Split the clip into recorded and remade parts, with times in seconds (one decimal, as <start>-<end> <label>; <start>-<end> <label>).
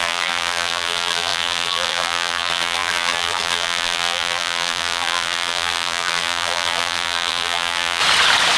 0.0-8.0 remade; 8.0-8.6 recorded